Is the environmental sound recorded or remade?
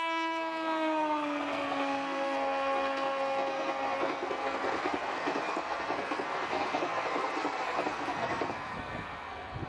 remade